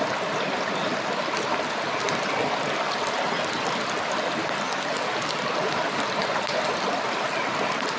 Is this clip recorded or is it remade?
recorded